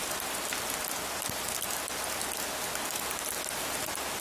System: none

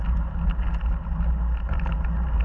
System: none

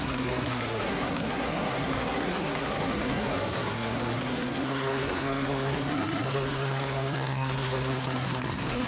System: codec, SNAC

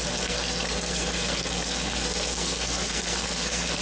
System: codec, SNAC